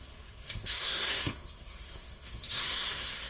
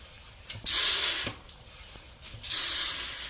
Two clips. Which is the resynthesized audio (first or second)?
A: first